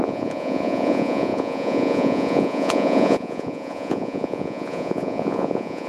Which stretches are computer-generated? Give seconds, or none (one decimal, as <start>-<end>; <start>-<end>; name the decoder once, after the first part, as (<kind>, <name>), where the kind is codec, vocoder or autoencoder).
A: 0.0-5.9 (vocoder, Vocos)